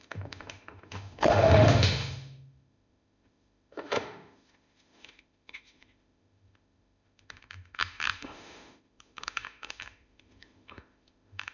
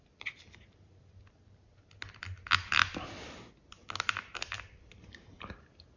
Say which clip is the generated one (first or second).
first